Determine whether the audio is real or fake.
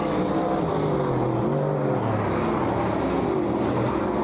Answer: real